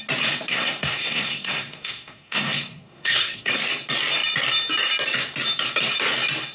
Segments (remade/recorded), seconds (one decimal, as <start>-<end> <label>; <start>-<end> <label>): 0.0-0.5 recorded; 0.5-3.5 remade; 3.5-6.5 recorded